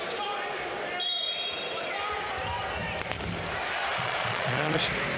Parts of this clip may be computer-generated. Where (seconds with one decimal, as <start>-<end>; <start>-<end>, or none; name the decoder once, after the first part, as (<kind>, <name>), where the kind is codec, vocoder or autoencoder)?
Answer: 3.9-4.8 (vocoder, Vocos)